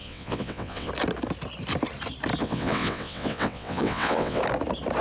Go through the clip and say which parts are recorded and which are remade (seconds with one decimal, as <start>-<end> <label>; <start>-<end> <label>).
0.0-0.9 remade; 0.9-2.4 recorded; 2.4-4.4 remade; 4.4-5.0 recorded